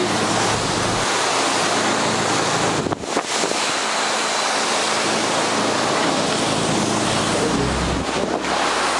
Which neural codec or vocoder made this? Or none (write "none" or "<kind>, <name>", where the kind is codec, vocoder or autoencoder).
none